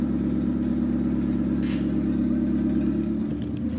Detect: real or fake real